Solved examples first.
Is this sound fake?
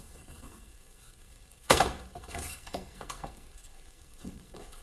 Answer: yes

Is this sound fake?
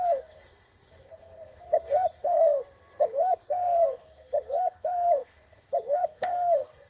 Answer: yes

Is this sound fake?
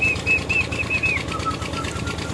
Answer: no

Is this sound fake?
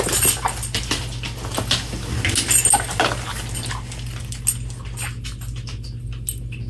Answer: no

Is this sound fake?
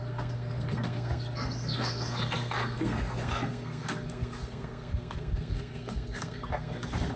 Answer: yes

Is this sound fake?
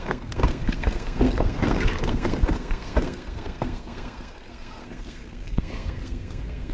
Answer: yes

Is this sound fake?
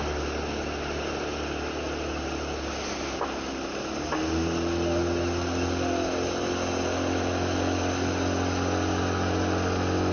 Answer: no